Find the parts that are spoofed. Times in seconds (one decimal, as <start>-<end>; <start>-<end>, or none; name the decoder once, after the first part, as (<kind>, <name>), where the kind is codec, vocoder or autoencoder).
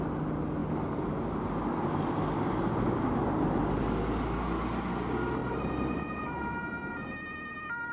5.4-6.6 (vocoder, BigVGAN v2)